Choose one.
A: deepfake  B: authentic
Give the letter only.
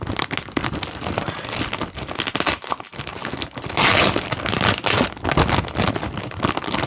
B